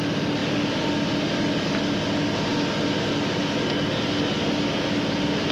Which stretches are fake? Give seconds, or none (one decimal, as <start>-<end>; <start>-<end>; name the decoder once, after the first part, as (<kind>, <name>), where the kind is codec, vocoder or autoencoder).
none